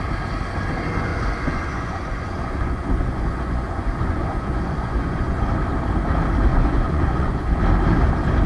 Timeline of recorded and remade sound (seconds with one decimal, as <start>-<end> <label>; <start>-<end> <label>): 0.0-1.1 recorded; 1.1-5.5 remade; 5.5-6.5 recorded; 6.5-7.6 remade; 7.6-8.5 recorded